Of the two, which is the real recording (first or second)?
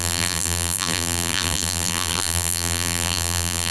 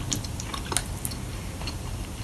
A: second